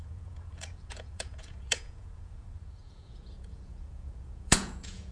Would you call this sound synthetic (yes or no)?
yes